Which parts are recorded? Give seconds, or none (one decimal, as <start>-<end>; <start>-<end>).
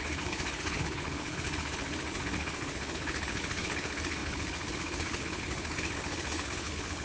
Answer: none